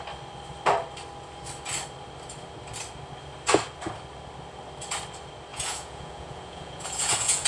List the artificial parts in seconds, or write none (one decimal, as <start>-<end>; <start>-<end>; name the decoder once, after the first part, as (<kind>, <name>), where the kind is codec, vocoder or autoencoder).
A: 5.5-7.5 (vocoder, Vocos)